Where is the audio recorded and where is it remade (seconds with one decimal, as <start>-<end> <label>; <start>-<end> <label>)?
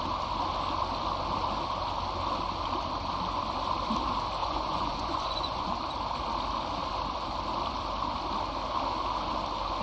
0.0-4.4 recorded; 4.4-5.7 remade; 5.7-9.8 recorded